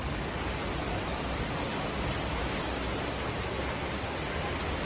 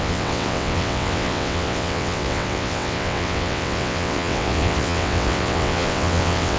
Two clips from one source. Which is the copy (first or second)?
second